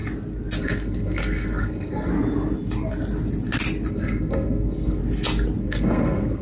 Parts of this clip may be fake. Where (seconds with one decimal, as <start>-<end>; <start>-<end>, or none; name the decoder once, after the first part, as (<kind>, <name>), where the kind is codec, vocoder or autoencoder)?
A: 0.6-2.1 (codec, SNAC); 3.9-5.0; 5.6-6.4